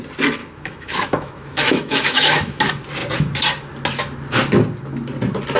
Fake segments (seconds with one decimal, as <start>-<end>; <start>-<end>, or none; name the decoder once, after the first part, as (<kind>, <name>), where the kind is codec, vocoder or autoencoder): 0.4-2.6 (autoencoder, DAC-VAE)